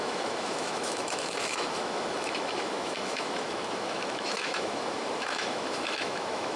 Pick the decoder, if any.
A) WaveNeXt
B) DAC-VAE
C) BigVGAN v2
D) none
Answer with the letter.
B